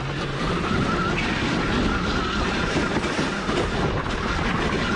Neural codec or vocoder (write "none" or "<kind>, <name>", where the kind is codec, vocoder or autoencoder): none